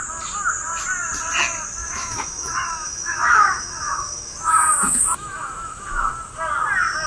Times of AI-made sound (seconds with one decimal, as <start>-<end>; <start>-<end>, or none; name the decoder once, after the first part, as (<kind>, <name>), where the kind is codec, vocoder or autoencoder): 1.8-6.1 (autoencoder, DAC-VAE)